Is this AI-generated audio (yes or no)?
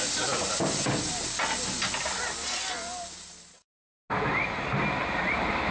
no